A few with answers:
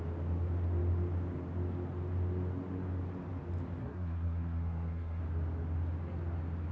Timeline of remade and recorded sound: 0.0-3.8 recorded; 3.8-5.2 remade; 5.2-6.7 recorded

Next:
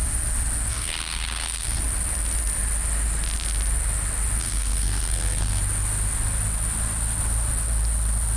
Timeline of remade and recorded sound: 0.0-0.7 recorded; 0.7-1.8 remade; 1.8-4.4 recorded; 4.4-5.6 remade; 5.6-8.4 recorded

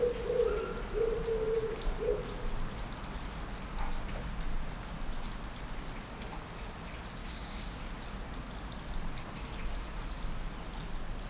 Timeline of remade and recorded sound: 0.0-7.2 recorded; 7.2-7.8 remade; 7.8-11.3 recorded

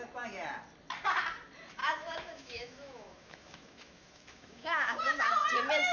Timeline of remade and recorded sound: 0.0-1.8 recorded; 1.8-5.3 remade; 5.3-5.9 recorded

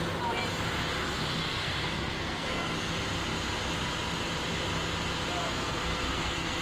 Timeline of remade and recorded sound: 0.0-1.4 recorded; 1.4-2.9 remade; 2.9-5.4 recorded; 5.4-6.6 remade

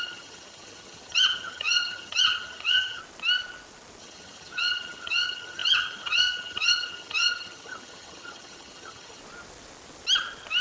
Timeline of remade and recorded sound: 0.0-3.0 remade; 3.0-4.0 recorded; 4.0-9.2 remade; 9.2-10.6 recorded